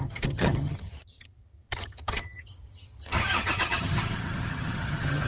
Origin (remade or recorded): remade